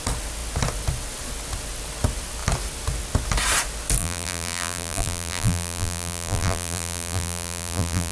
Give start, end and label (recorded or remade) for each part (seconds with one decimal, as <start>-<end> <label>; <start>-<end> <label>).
0.0-4.0 recorded; 4.0-8.1 remade